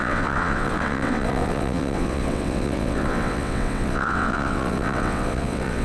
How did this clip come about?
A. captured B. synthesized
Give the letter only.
B